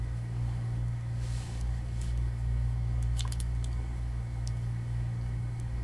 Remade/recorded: remade